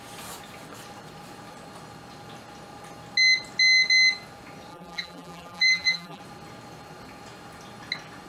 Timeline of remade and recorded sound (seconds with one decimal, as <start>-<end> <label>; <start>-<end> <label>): 0.0-4.7 recorded; 4.7-6.2 remade; 6.2-8.3 recorded